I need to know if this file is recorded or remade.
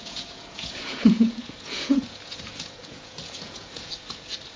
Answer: remade